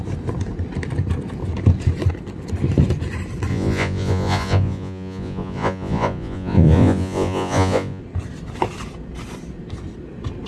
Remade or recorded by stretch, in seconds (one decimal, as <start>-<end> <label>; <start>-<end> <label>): 0.0-3.5 recorded; 3.5-8.0 remade; 8.0-10.5 recorded